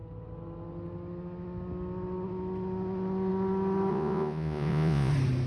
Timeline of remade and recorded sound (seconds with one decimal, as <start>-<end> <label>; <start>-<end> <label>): 0.0-3.9 recorded; 3.9-5.1 remade; 5.1-5.5 recorded